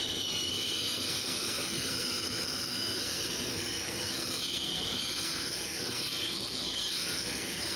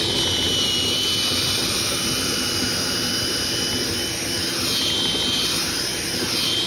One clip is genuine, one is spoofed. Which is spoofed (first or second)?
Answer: first